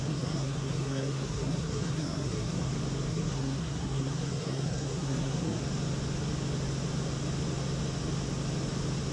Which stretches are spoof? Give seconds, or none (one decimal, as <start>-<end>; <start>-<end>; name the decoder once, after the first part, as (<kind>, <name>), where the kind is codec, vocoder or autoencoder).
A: 0.0-2.7 (codec, SNAC); 3.1-5.6